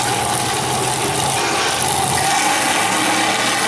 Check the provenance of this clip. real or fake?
real